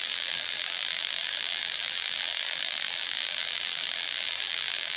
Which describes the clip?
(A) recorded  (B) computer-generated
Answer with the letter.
B